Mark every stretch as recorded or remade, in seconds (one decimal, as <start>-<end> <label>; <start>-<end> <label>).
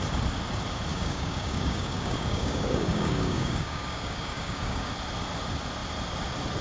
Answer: 0.0-0.9 recorded; 0.9-4.9 remade; 4.9-6.6 recorded